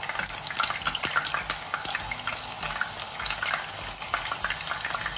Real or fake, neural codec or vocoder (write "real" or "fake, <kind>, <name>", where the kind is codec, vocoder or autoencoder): real